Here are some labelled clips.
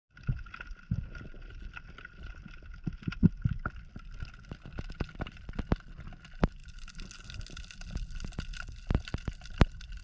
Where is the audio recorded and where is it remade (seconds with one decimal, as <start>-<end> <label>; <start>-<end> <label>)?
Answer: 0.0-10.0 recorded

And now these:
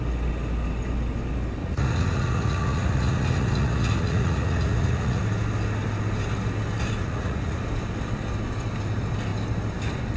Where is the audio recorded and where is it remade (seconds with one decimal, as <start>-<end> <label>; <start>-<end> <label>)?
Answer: 0.0-1.6 recorded; 1.6-5.2 remade; 5.2-7.0 recorded; 7.0-7.6 remade; 7.6-10.2 recorded

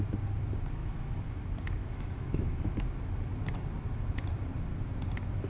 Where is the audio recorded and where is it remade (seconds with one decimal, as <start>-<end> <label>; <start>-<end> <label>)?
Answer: 0.0-0.8 recorded; 0.8-1.4 remade; 1.4-1.8 recorded; 1.8-2.8 remade; 2.8-5.5 recorded

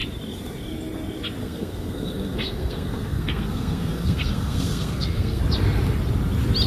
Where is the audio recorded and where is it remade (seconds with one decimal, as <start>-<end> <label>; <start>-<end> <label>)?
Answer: 0.0-1.4 recorded; 1.4-5.4 remade; 5.4-6.7 recorded

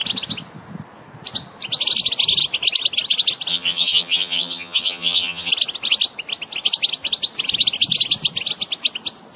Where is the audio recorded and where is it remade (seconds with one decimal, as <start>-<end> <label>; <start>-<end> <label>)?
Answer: 0.0-3.5 recorded; 3.5-5.5 remade; 5.5-9.4 recorded

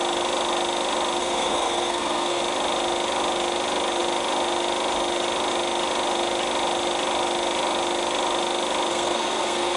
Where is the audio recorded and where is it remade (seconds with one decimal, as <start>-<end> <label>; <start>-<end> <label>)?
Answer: 0.0-1.2 recorded; 1.2-2.4 remade; 2.4-8.9 recorded; 8.9-9.8 remade